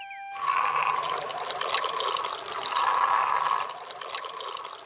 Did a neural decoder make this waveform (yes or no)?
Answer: no